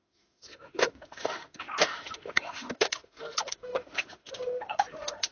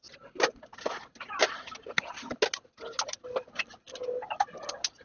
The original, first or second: second